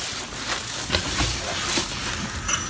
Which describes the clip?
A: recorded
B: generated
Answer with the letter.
A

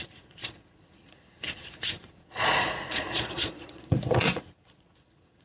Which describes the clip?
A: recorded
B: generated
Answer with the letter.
B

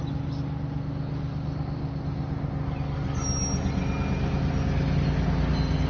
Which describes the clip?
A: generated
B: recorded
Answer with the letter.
B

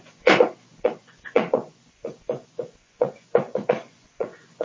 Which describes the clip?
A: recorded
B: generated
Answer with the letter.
B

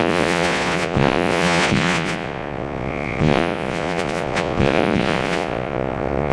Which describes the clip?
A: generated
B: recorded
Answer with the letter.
A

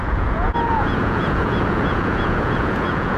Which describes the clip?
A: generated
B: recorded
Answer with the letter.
A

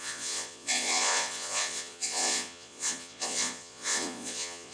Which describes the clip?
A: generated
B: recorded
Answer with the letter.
A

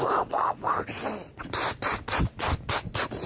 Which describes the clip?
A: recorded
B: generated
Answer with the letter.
A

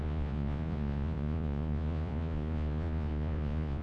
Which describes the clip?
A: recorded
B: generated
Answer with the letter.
B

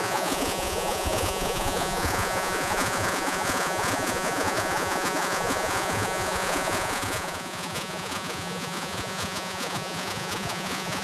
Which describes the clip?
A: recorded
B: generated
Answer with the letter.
B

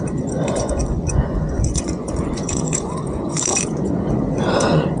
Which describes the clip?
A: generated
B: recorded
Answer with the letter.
A